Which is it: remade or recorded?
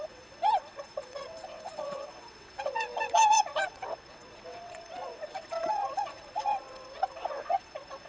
remade